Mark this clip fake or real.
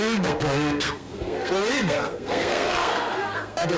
fake